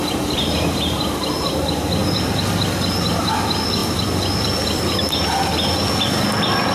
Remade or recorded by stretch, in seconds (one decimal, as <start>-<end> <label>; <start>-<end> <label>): 0.0-3.8 recorded; 3.8-5.3 remade; 5.3-6.7 recorded